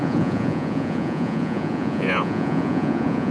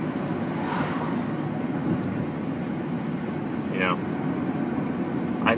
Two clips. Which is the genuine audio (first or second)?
second